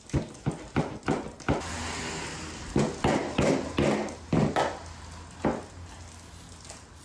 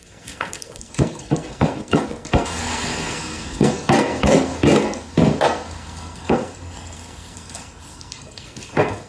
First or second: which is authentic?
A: first